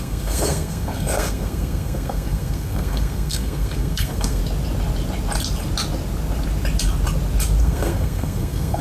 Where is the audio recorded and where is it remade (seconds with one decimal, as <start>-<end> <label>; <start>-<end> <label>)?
0.0-4.4 remade; 4.4-7.6 recorded; 7.6-8.8 remade